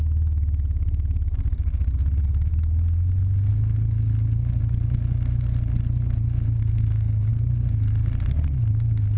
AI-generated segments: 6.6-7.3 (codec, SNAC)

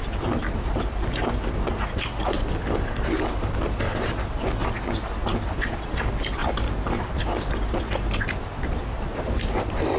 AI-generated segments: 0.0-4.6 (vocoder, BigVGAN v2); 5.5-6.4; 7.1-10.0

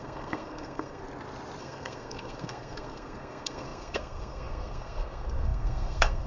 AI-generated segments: 0.0-1.0 (codec, SNAC); 1.6-6.3

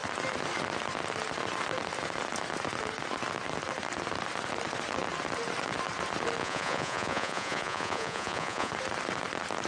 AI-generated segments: 6.4-8.7 (vocoder, Vocos)

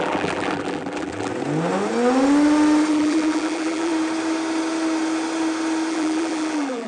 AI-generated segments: 0.0-1.3 (vocoder, BigVGAN v2); 2.9-3.9; 5.9-6.9

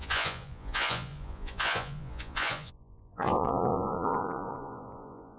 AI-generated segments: 0.0-5.4 (vocoder, Vocos)

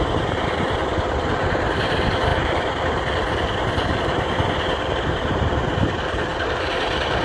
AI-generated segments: 0.0-7.2 (vocoder, BigVGAN v2)

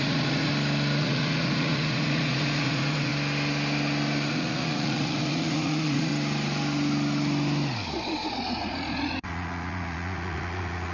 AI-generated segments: 0.0-0.5 (vocoder, Vocos); 1.0-3.1; 4.3-6.1; 8.3-10.9